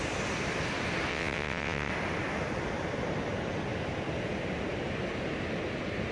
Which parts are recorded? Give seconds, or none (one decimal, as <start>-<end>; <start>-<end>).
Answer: 0.0-1.1; 1.9-6.1